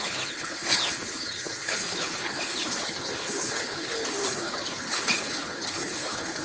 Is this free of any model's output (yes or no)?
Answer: no